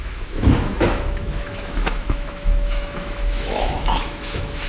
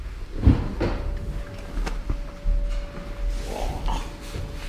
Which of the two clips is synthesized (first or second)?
first